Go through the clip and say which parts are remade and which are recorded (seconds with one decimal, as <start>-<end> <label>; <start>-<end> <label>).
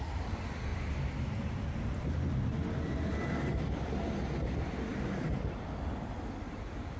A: 0.0-7.0 recorded